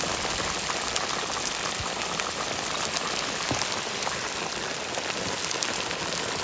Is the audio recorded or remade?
recorded